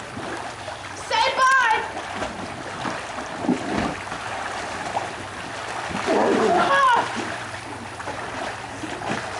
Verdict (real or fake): real